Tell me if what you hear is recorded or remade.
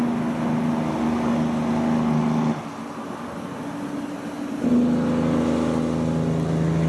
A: recorded